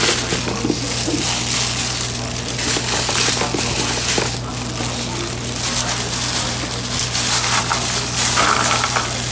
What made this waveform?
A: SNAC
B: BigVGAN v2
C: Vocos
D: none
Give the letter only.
D